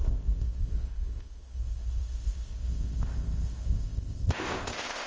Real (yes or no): no